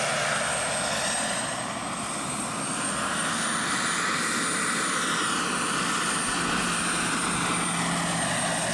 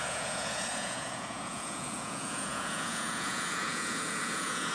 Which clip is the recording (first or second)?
first